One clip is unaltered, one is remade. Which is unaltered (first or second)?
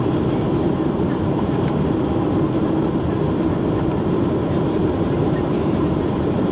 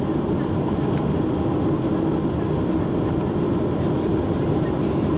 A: second